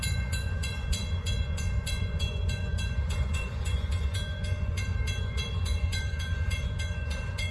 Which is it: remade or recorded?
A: remade